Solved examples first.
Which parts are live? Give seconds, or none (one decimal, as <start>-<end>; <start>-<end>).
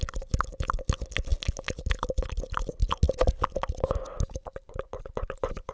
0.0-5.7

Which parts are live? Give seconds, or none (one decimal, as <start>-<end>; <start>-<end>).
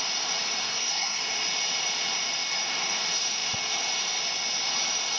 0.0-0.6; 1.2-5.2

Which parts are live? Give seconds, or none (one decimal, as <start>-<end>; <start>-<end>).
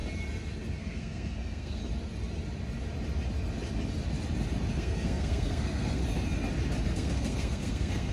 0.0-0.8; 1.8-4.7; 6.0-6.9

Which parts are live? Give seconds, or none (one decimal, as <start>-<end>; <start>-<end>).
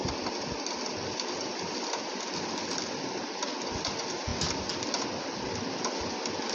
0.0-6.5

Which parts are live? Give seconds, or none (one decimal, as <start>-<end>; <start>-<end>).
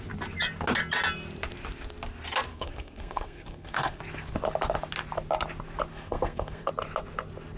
0.0-2.5; 4.0-5.9; 6.7-7.6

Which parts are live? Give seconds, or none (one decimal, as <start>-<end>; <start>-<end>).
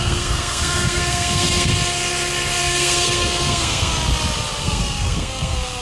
1.7-2.6; 3.9-4.6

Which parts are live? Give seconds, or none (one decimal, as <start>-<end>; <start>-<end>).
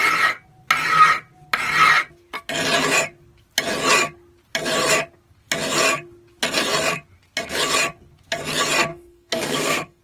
0.0-8.9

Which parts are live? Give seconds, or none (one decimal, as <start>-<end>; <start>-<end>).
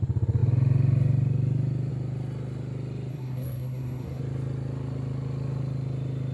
0.0-3.1; 4.2-6.3